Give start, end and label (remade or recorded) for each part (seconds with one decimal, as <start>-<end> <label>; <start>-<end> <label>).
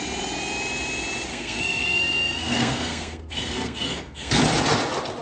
0.0-1.3 recorded; 1.3-4.4 remade; 4.4-5.2 recorded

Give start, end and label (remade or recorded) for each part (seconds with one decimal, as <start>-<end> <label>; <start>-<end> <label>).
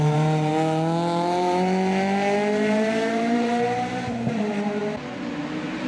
0.0-0.5 remade; 0.5-2.5 recorded; 2.5-4.8 remade; 4.8-5.4 recorded; 5.4-5.9 remade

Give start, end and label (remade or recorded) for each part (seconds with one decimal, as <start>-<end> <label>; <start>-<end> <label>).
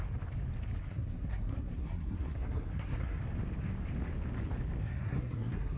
0.0-0.8 recorded; 0.8-3.2 remade; 3.2-4.8 recorded; 4.8-5.8 remade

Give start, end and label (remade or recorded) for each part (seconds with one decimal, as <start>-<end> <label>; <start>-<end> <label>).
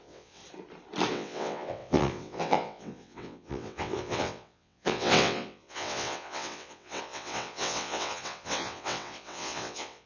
0.0-0.4 remade; 0.4-1.1 recorded; 1.1-10.1 remade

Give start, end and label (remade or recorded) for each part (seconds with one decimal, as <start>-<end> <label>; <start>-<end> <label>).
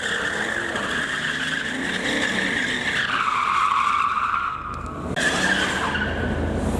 0.0-4.3 recorded; 4.3-5.1 remade; 5.1-6.8 recorded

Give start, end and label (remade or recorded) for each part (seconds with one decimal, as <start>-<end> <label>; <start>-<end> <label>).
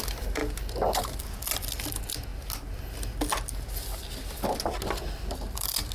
0.0-5.9 recorded